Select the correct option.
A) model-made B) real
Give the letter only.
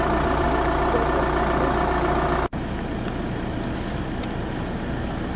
B